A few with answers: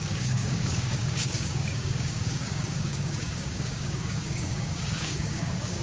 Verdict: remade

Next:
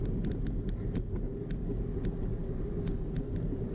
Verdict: recorded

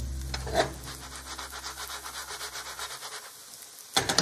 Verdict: recorded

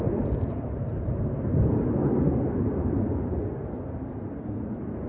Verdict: recorded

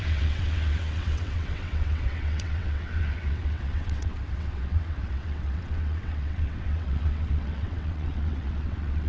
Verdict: remade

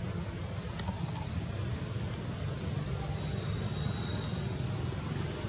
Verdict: recorded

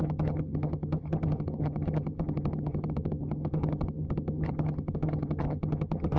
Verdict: remade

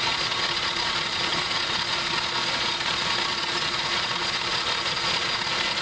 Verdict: remade